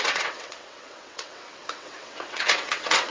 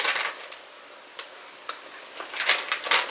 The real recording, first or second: second